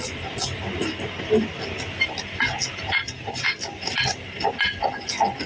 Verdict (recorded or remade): recorded